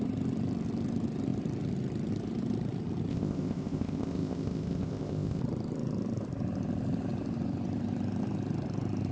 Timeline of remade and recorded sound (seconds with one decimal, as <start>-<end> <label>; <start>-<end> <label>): 0.0-3.1 recorded; 3.1-5.4 remade; 5.4-9.1 recorded